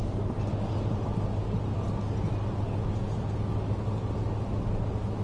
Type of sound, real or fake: real